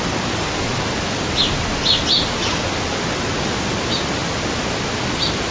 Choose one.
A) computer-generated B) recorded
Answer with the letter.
B